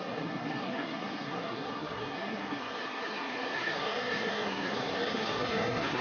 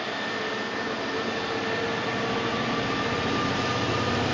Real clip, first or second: second